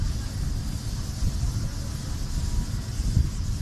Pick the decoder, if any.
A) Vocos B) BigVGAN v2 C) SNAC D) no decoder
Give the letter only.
D